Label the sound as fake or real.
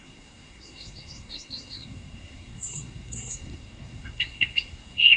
fake